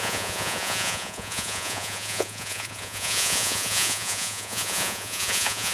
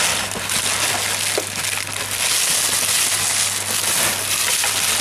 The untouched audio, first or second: second